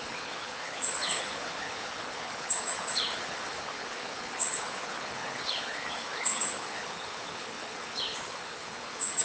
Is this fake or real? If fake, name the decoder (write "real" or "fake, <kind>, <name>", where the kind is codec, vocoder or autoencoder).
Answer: fake, codec, HILCodec